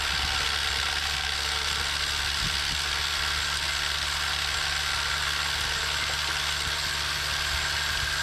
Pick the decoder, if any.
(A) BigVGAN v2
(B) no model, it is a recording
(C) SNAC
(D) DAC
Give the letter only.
B